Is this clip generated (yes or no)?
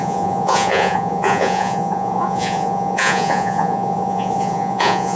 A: yes